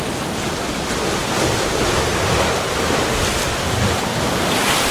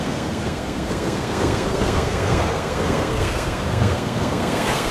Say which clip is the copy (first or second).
second